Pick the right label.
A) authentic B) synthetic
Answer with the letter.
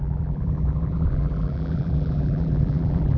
B